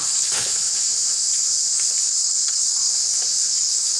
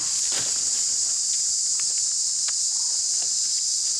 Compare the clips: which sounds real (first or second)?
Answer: second